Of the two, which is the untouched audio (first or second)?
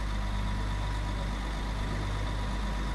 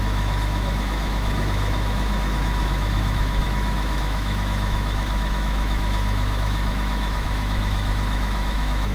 first